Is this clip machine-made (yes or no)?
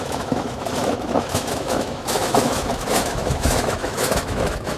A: yes